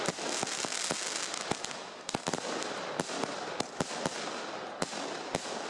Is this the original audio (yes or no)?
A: yes